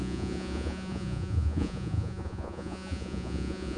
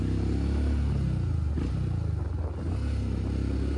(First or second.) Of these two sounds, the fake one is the first